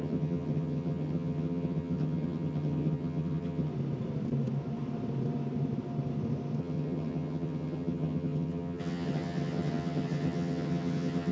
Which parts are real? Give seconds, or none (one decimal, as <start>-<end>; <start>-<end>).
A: 3.7-6.6